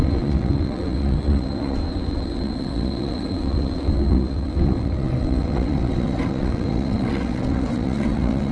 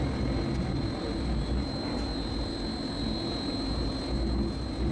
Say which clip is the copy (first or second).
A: first